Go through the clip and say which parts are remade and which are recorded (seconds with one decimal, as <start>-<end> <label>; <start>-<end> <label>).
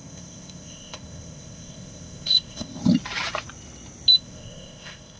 0.0-2.8 remade; 2.8-4.1 recorded; 4.1-5.2 remade